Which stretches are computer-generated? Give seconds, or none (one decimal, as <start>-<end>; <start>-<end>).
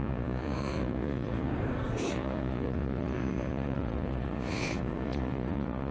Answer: 0.0-1.5; 2.1-5.9